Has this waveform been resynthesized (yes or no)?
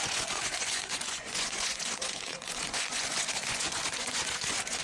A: yes